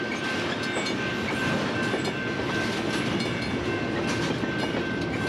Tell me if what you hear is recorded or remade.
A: recorded